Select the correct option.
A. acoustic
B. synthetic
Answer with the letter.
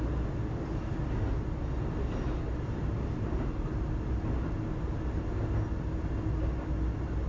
A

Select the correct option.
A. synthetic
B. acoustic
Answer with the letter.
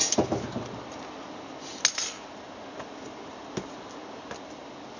B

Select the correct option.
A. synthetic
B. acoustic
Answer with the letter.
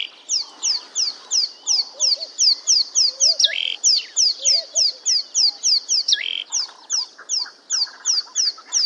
B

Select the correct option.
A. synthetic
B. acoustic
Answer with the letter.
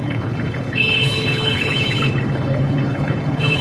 A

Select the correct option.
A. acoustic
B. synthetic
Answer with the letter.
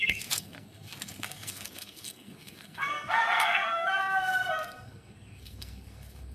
B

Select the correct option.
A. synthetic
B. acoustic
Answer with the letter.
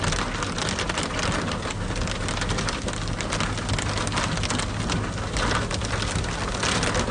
B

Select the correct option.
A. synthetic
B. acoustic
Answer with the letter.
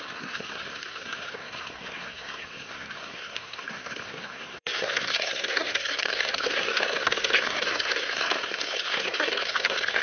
A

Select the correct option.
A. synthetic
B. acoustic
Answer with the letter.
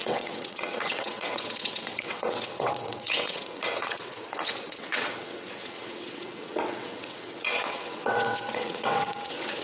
A